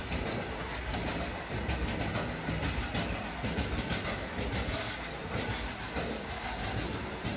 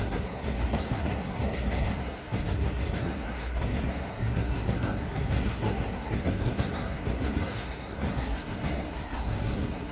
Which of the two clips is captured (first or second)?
first